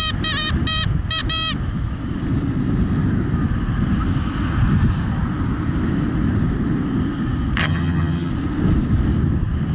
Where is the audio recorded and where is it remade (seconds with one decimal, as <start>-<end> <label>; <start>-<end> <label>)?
0.0-7.6 recorded; 7.6-8.3 remade; 8.3-9.7 recorded